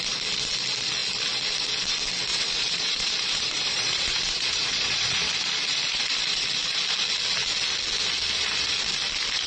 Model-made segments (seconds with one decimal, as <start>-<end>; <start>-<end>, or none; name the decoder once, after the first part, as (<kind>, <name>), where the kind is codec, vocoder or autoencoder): 2.3-5.3 (vocoder, Vocos)